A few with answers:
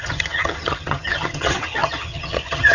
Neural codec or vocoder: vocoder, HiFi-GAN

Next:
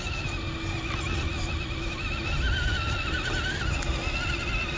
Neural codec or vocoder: none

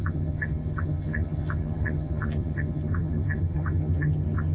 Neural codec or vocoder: vocoder, HiFi-GAN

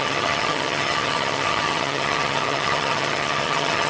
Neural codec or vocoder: vocoder, HiFi-GAN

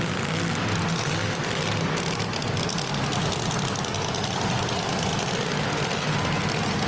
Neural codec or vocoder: none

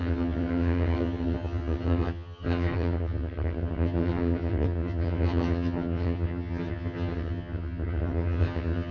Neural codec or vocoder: vocoder, HiFi-GAN